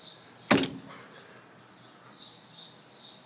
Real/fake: real